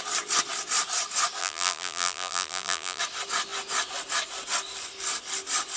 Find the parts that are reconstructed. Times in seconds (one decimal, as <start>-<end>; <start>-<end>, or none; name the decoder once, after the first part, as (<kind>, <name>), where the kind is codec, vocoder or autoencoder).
1.4-3.0 (vocoder, BigVGAN v2)